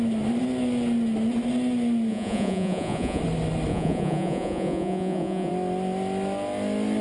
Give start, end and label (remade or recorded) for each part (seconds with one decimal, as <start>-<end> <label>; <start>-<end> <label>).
0.0-2.1 recorded; 2.1-3.2 remade; 3.2-3.7 recorded; 3.7-5.5 remade; 5.5-7.0 recorded